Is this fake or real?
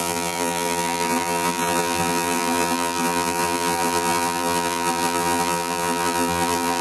fake